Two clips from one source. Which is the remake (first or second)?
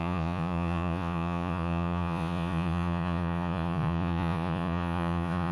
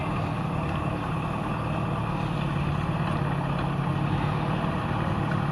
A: first